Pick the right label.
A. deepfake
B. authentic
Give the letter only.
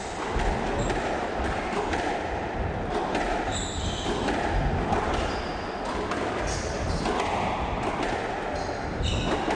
B